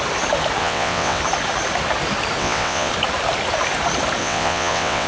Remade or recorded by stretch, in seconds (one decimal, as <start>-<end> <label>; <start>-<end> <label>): 0.0-0.6 recorded; 0.6-1.2 remade; 1.2-2.4 recorded; 2.4-2.9 remade; 2.9-4.2 recorded; 4.2-5.1 remade